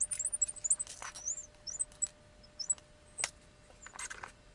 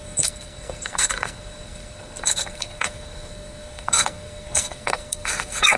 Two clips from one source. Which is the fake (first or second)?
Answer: second